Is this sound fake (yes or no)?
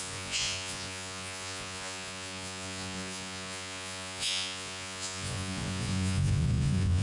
yes